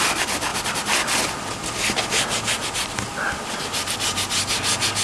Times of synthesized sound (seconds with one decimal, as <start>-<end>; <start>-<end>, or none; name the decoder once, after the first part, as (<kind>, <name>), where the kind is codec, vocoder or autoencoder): none